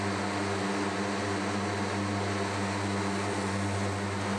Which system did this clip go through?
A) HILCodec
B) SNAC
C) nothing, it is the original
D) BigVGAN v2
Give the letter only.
C